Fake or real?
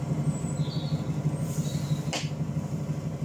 real